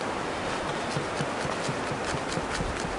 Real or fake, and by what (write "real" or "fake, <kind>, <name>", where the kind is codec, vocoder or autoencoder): real